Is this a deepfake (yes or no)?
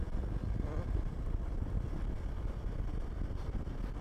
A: yes